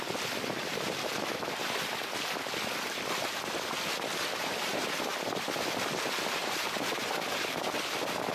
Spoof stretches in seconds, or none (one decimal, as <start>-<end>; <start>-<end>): 6.4-7.7